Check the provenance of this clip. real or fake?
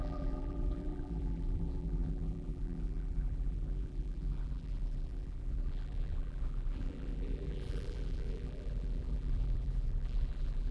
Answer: fake